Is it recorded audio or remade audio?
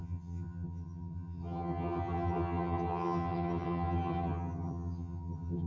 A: remade